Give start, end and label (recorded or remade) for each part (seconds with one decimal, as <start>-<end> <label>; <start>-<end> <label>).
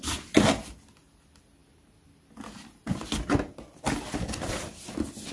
0.0-5.3 recorded